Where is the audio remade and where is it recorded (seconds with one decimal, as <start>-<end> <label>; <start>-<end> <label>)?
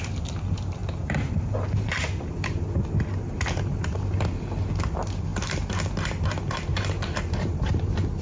0.0-0.8 recorded; 0.8-1.9 remade; 1.9-8.2 recorded